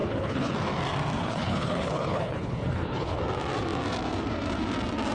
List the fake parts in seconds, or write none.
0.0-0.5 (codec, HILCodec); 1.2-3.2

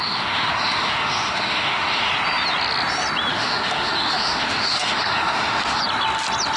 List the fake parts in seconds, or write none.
0.0-2.1 (autoencoder, DAC-VAE); 3.3-5.8

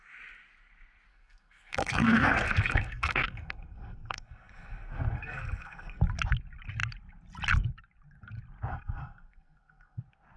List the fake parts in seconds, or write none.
1.1-6.0 (codec, SNAC); 8.7-10.0

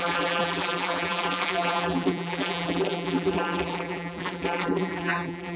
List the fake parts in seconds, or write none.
0.0-5.6 (vocoder, BigVGAN v2)

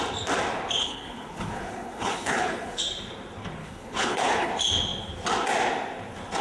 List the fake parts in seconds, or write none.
0.8-2.8 (codec, HILCodec); 3.6-4.5